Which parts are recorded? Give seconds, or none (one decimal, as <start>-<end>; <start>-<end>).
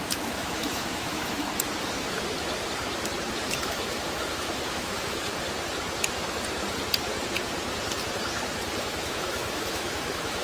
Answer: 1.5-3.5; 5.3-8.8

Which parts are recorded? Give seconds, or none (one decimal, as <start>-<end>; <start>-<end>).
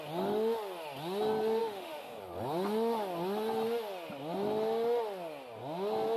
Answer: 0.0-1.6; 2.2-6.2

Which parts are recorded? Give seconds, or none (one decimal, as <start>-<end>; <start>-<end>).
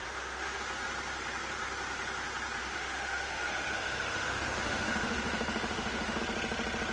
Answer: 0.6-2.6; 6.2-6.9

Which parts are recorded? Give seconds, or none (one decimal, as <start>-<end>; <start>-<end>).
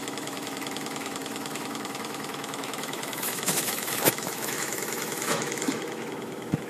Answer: none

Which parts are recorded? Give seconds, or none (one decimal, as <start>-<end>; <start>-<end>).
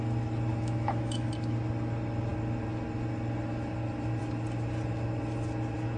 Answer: 0.0-0.5; 1.3-6.0